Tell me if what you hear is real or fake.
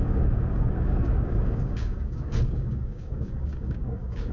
fake